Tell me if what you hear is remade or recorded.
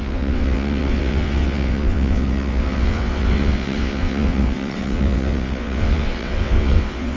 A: remade